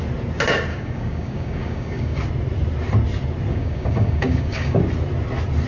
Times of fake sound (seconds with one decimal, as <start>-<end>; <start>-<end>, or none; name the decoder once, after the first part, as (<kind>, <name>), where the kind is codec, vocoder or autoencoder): 0.7-2.2 (codec, DAC); 3.5-4.8